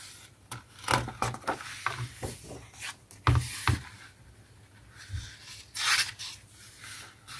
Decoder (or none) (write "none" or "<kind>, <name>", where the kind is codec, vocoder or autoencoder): none